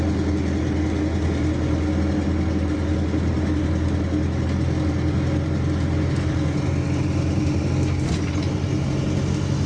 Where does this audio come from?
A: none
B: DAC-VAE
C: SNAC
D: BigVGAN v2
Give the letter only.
A